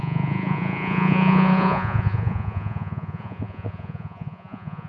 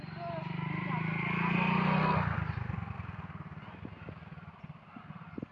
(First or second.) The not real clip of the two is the first